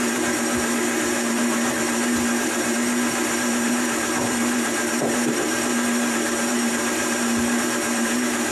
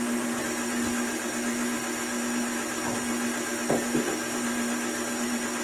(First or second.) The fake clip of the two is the first